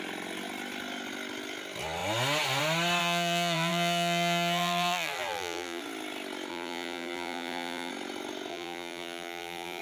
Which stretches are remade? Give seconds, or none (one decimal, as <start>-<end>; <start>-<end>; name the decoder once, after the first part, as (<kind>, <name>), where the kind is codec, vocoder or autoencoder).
3.0-5.8 (vocoder, BigVGAN v2); 6.5-7.9; 8.5-9.8